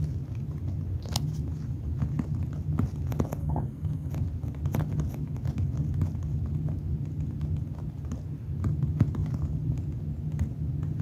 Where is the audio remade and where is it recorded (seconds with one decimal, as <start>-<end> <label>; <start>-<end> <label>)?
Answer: 0.0-3.4 recorded; 3.4-4.1 remade; 4.1-11.0 recorded